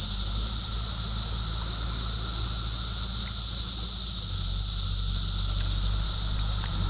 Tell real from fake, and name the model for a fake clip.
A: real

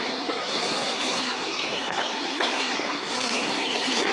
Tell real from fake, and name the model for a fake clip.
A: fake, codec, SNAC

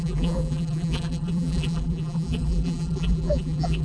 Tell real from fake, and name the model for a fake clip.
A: fake, vocoder, BigVGAN v2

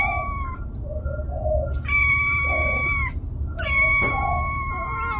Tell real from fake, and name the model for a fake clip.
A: real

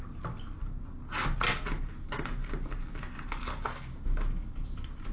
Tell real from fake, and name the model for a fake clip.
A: real